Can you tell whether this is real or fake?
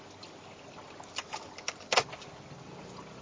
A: real